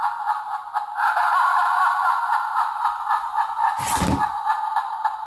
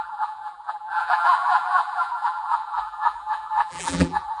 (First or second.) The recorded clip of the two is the first